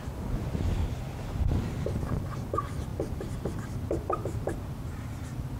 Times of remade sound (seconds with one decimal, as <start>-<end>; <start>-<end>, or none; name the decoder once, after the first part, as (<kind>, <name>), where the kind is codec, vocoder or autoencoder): 0.0-0.8 (vocoder, BigVGAN v2); 2.5-5.6